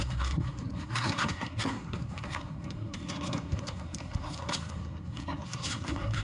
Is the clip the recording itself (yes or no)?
no